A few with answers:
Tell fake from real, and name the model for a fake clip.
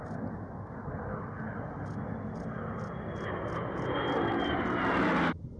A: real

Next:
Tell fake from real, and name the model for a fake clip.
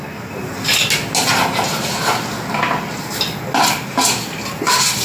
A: real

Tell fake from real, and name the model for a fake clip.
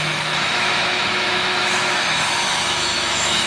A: fake, autoencoder, DAC-VAE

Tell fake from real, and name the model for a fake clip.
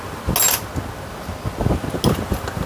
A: real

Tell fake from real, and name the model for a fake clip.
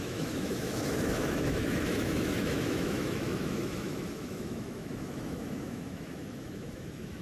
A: fake, autoencoder, DAC-VAE